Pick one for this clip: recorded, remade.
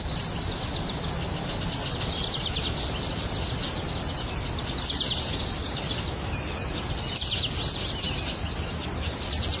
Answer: recorded